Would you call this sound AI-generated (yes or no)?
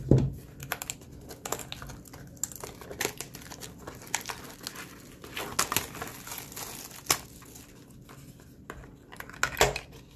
no